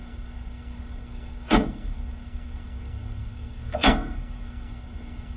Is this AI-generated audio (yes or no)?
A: yes